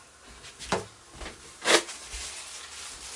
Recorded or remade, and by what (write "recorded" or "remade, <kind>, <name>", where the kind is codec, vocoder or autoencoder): recorded